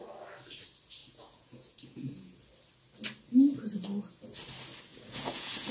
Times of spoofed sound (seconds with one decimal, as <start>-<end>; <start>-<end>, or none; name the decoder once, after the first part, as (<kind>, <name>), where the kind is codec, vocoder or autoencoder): 1.0-2.4 (vocoder, Vocos); 4.9-5.7